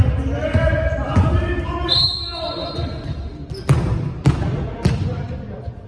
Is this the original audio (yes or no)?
yes